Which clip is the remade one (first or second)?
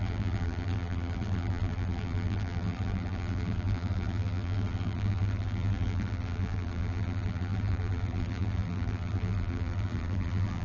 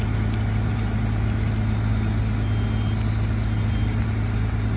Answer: first